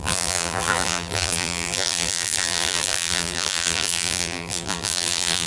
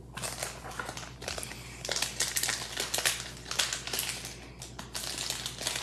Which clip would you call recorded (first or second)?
second